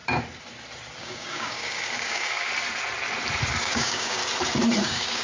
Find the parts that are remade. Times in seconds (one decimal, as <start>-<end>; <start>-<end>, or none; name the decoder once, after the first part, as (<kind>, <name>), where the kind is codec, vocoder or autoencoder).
1.0-2.5 (codec, DAC); 3.6-4.2; 4.8-5.2

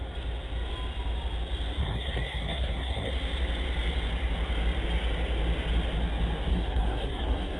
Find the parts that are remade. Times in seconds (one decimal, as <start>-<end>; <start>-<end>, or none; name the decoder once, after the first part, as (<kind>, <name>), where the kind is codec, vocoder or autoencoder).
1.8-3.1 (codec, SNAC); 6.5-7.6

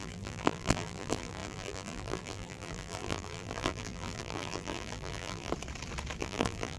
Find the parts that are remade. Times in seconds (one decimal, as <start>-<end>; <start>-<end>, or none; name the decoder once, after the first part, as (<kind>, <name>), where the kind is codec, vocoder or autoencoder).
0.0-5.5 (vocoder, BigVGAN v2); 6.2-6.8